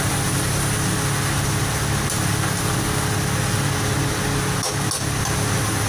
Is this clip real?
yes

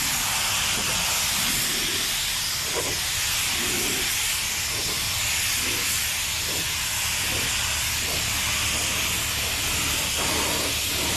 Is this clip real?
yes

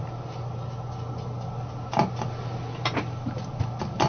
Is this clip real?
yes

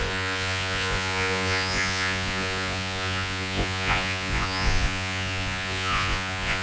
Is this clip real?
no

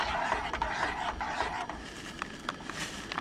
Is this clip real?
yes